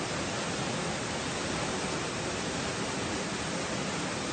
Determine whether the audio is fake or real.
real